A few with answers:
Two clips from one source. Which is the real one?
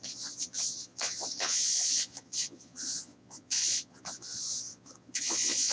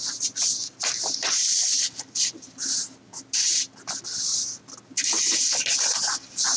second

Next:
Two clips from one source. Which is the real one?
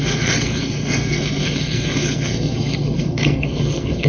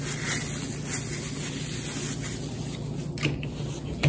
second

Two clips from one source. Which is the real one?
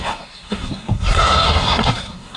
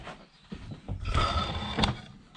second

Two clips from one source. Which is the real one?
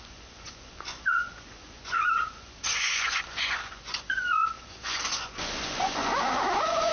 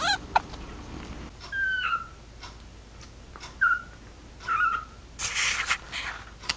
second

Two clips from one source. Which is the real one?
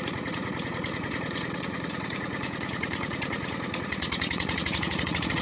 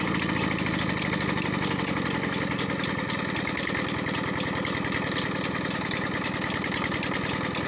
second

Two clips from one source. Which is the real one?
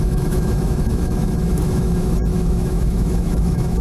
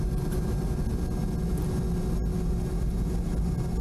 second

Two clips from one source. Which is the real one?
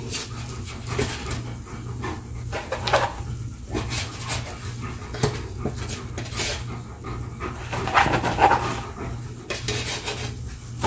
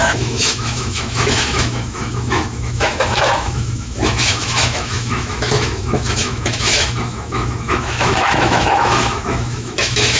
first